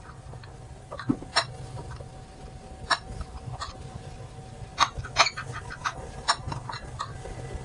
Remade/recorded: recorded